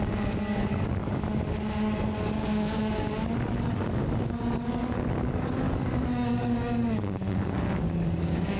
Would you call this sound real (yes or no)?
no